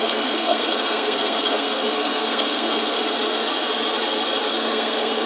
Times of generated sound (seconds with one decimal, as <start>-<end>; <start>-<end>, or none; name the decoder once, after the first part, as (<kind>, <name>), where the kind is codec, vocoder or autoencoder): 0.0-3.0 (codec, SNAC); 4.5-5.3